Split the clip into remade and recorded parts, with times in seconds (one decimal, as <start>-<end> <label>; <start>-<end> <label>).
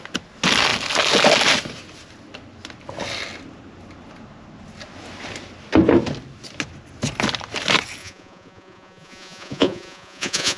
0.0-8.0 recorded; 8.0-10.6 remade